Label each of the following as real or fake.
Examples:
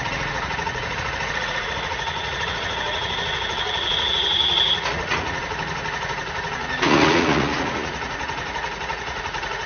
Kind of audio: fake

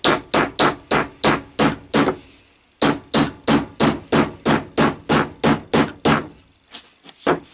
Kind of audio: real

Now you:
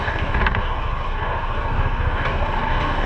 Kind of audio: fake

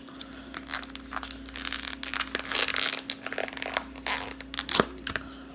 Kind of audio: real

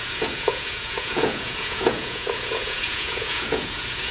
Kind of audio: fake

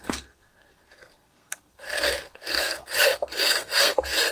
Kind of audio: fake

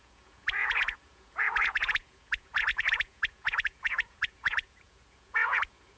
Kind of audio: fake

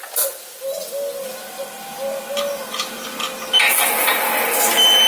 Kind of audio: real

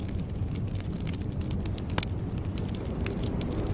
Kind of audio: real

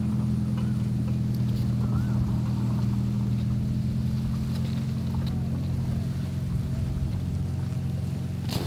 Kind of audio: real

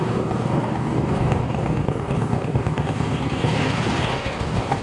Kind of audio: fake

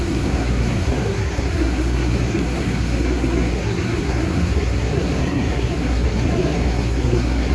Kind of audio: fake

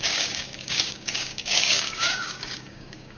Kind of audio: fake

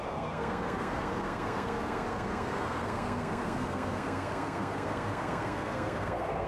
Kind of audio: fake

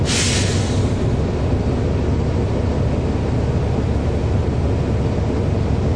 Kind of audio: real